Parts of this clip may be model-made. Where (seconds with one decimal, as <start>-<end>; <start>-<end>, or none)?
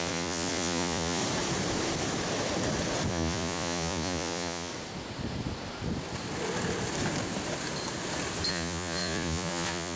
0.0-1.2; 3.1-4.7; 8.5-10.0